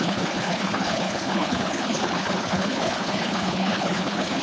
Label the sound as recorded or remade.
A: remade